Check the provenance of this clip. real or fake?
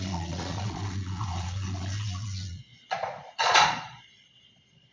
fake